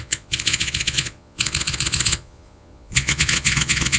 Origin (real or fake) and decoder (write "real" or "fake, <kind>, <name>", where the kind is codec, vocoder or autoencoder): fake, vocoder, Vocos